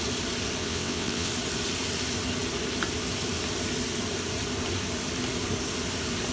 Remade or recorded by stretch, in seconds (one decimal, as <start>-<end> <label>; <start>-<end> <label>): 0.0-0.6 recorded; 0.6-1.3 remade; 1.3-6.3 recorded